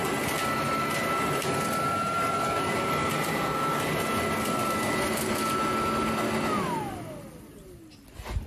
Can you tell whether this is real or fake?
real